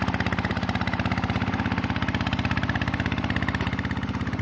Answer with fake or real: real